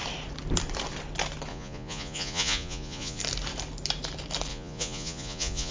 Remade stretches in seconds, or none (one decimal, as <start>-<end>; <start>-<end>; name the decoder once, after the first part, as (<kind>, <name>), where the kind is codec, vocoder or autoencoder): 1.5-3.2 (vocoder, Vocos); 4.5-5.7